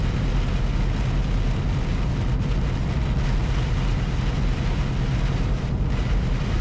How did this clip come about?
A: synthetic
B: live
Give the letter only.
B